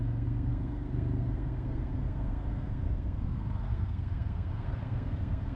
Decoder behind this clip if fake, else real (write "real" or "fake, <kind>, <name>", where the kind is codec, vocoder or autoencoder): fake, codec, SNAC